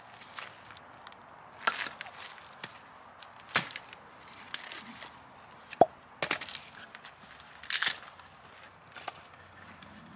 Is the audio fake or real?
real